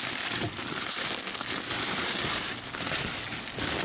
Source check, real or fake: real